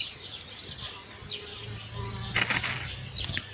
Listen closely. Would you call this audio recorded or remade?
recorded